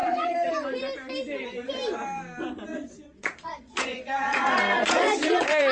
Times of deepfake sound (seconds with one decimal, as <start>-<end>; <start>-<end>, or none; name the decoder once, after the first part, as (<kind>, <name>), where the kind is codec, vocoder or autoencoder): 0.0-0.5 (vocoder, Vocos); 2.7-5.7